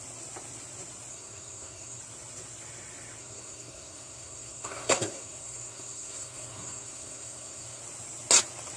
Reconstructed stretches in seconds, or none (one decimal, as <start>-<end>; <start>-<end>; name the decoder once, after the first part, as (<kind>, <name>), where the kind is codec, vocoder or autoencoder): 1.1-2.0 (codec, SNAC); 3.2-7.8